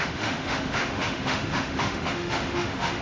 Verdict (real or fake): fake